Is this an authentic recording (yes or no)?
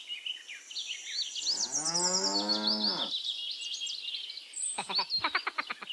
yes